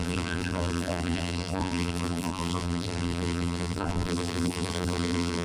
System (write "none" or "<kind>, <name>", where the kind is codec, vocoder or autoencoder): vocoder, BigVGAN v2